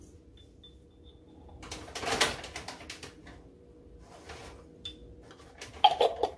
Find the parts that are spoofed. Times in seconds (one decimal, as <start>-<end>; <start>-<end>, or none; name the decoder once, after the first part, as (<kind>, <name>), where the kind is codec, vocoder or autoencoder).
none